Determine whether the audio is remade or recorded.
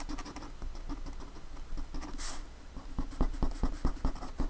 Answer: recorded